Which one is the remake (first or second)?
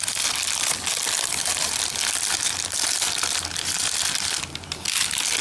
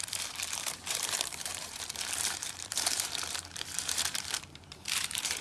second